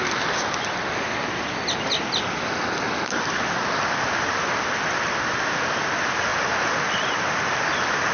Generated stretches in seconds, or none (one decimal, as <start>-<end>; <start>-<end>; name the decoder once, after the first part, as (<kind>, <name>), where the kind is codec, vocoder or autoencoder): 6.3-6.9 (vocoder, BigVGAN v2)